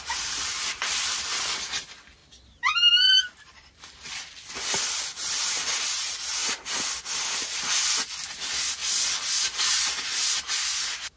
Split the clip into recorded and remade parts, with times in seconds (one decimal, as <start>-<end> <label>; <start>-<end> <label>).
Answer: 0.0-6.4 recorded; 6.4-7.1 remade; 7.1-8.8 recorded; 8.8-9.6 remade; 9.6-11.2 recorded